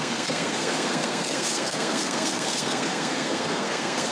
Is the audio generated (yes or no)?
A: yes